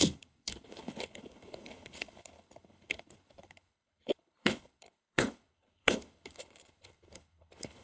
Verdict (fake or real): fake